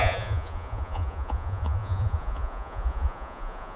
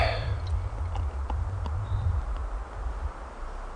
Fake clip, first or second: first